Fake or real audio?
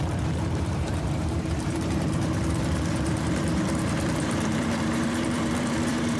fake